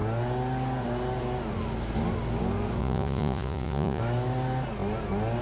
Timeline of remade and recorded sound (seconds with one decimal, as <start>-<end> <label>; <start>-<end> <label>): 0.0-2.8 recorded; 2.8-4.0 remade; 4.0-5.4 recorded